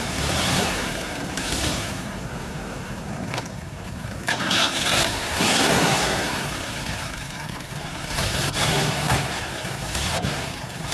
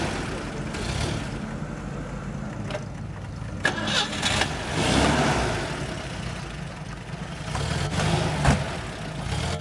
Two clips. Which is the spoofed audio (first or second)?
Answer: first